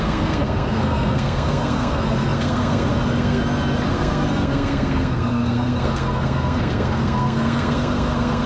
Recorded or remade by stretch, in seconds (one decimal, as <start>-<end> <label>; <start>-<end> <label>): 0.0-3.4 remade; 3.4-3.9 recorded; 3.9-8.5 remade